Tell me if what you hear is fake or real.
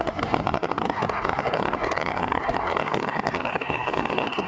fake